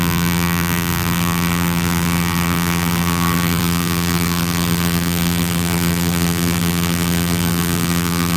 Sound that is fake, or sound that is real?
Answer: fake